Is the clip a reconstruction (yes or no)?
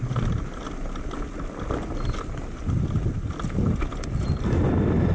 no